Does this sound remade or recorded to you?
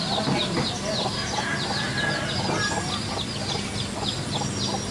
recorded